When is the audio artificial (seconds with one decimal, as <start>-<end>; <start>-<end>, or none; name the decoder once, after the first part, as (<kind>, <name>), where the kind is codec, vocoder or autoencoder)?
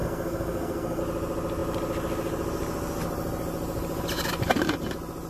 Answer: 0.0-1.0 (codec, SNAC)